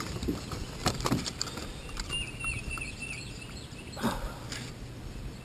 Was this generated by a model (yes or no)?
no